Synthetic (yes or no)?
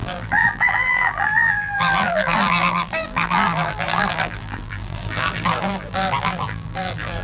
yes